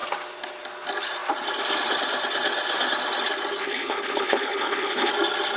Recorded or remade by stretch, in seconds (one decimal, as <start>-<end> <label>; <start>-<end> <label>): 0.0-3.6 recorded; 3.6-5.1 remade; 5.1-5.6 recorded